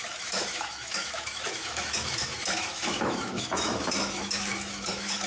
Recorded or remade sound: remade